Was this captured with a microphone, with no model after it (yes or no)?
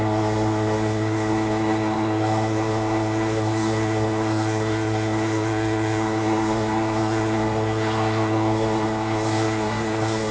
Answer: no